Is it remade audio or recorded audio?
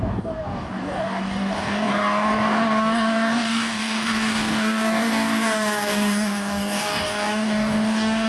remade